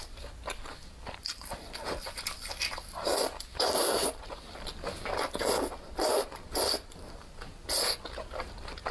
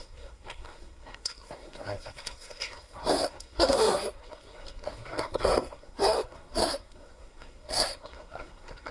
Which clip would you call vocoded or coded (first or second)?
second